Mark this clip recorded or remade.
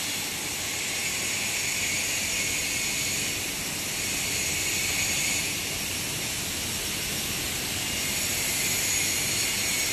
recorded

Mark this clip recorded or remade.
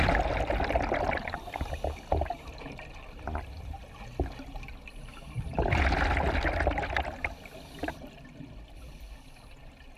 recorded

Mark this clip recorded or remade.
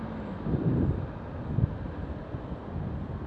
recorded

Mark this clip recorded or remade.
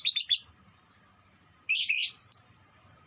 remade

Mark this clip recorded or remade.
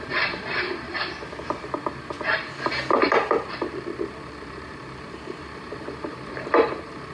remade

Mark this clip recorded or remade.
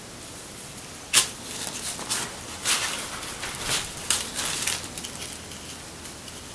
recorded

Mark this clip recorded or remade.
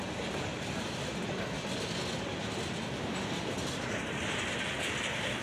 recorded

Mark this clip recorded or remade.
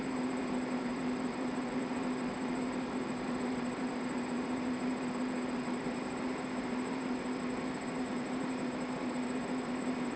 remade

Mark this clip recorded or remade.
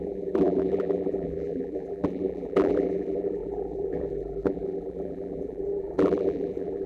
remade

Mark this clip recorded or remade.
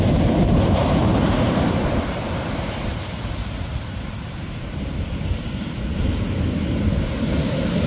remade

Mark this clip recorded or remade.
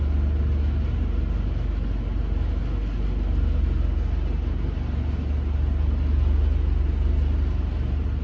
recorded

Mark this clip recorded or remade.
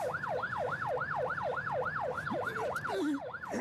remade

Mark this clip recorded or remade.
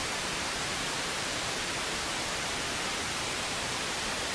remade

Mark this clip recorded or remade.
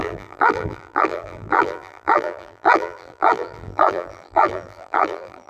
remade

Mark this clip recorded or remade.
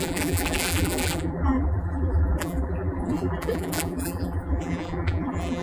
remade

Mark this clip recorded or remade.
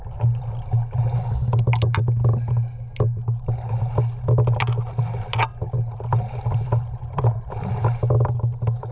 recorded